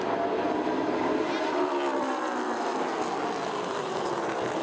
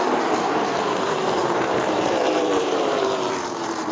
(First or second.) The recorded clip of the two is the first